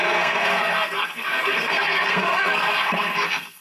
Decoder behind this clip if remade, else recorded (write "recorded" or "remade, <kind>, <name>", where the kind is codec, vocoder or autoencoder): remade, codec, SNAC